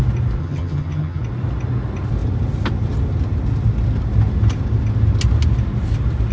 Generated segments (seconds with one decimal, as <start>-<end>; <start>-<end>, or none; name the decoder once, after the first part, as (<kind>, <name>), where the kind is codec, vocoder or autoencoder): 0.4-1.2 (vocoder, HiFi-GAN)